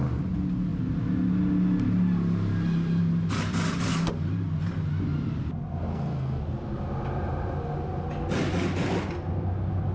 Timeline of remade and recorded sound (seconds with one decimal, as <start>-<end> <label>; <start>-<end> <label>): 0.0-5.9 recorded; 5.9-6.4 remade; 6.4-9.9 recorded

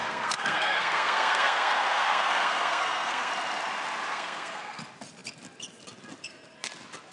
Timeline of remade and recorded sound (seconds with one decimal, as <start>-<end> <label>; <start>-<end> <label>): 0.0-3.3 remade; 3.3-4.1 recorded; 4.1-4.8 remade; 4.8-7.1 recorded

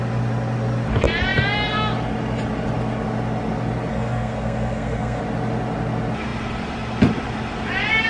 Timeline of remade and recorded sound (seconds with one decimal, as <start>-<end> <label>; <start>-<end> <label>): 0.0-3.9 recorded; 3.9-5.2 remade; 5.2-8.1 recorded